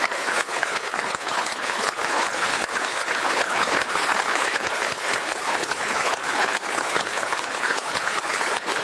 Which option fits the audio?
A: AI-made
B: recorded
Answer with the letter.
A